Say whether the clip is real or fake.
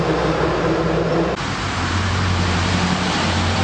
fake